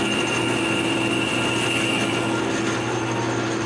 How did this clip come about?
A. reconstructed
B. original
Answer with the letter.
B